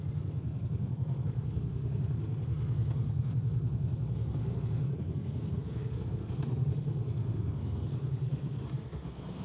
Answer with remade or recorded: remade